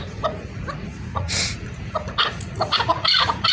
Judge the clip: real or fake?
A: fake